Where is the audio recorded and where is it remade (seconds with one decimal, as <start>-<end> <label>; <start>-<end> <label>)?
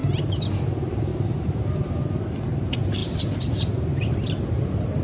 0.0-0.6 remade; 0.6-1.1 recorded; 1.1-2.4 remade; 2.4-5.0 recorded